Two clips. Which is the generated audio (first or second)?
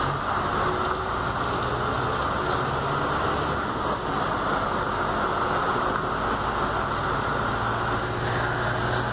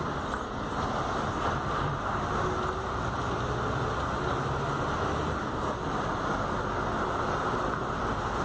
second